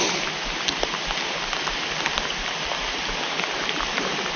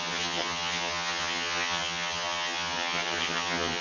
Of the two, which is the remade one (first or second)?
second